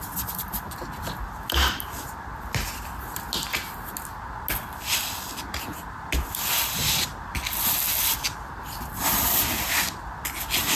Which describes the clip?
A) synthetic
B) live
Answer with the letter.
B